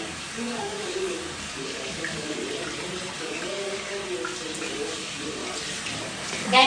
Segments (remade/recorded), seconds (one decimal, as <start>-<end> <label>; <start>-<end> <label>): 0.0-2.4 remade; 2.4-3.2 recorded; 3.2-4.0 remade; 4.0-4.6 recorded; 4.6-5.4 remade; 5.4-6.0 recorded; 6.0-6.7 remade